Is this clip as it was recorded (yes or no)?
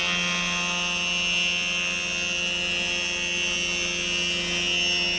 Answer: yes